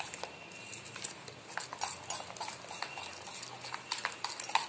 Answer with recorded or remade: recorded